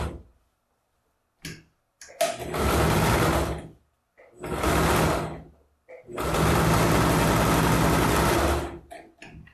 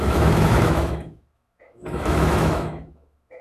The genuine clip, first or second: first